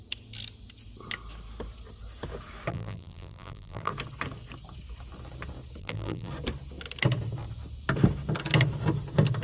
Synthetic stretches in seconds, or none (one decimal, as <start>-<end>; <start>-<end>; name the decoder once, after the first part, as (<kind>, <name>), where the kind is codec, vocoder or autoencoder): 2.7-3.9 (vocoder, BigVGAN v2); 5.8-6.3